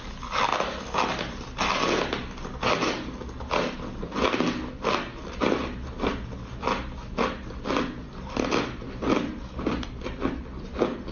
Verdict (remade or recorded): recorded